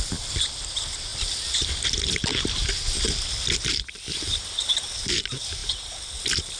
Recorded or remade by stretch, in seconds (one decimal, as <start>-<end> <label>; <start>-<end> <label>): 0.0-6.6 recorded